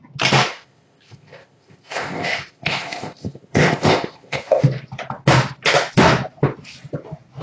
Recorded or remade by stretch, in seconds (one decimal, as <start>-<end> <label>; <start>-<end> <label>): 0.0-0.5 recorded; 0.5-4.6 remade; 4.6-7.4 recorded